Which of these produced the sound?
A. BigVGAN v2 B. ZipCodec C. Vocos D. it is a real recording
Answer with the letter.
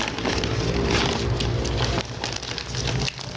D